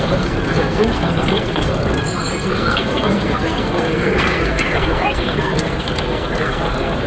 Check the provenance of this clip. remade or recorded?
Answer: remade